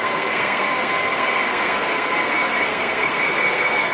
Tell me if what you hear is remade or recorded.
remade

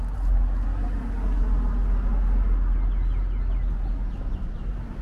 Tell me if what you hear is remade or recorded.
recorded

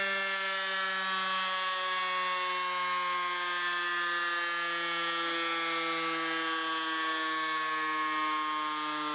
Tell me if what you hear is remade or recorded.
recorded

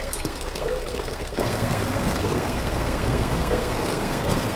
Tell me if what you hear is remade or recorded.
remade